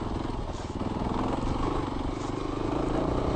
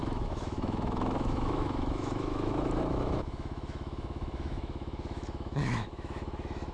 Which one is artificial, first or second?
second